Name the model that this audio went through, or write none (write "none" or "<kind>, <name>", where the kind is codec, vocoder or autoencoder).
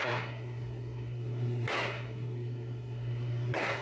codec, SNAC